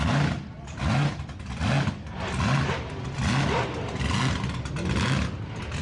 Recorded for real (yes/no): yes